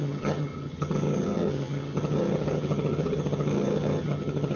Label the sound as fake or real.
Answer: fake